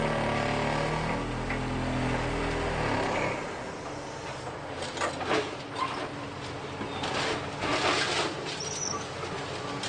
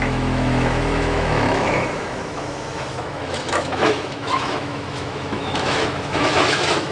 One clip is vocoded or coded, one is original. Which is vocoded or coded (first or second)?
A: second